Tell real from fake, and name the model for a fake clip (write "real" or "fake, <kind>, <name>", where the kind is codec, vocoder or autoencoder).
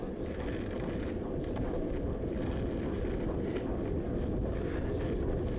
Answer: real